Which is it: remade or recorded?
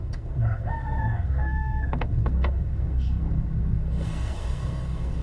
remade